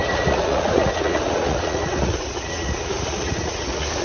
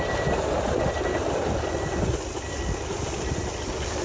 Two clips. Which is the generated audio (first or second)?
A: first